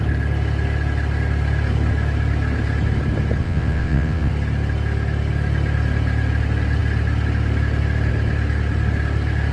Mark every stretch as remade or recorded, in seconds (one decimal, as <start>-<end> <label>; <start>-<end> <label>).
0.0-3.4 recorded; 3.4-4.3 remade; 4.3-9.5 recorded